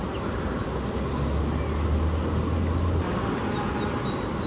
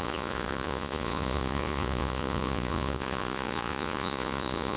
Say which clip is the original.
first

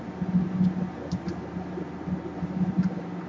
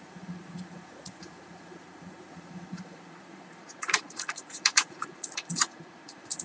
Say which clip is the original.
first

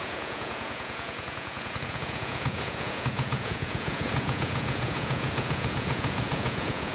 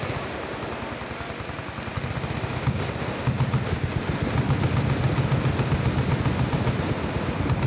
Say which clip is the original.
second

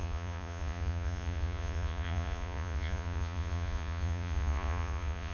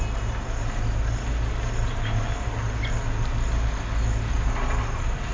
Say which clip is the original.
second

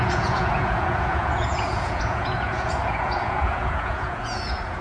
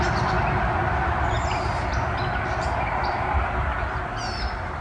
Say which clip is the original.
second